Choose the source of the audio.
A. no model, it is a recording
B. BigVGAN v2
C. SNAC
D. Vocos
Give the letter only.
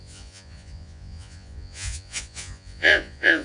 D